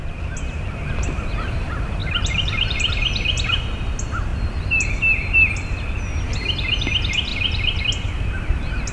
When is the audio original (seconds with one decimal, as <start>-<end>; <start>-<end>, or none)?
0.0-2.0; 2.9-7.3; 7.8-8.9